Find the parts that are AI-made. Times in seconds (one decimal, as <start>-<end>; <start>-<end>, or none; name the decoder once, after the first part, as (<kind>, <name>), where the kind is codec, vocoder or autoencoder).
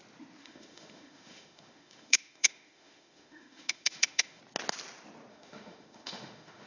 0.4-4.4 (autoencoder, DAC-VAE); 5.3-6.7